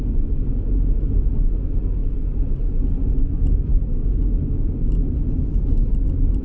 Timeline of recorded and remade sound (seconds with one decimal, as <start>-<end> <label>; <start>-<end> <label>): 0.0-6.4 recorded